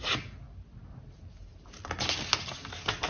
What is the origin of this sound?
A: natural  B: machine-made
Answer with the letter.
A